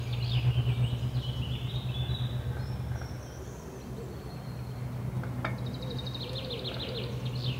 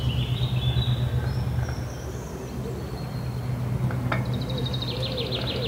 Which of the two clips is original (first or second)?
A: first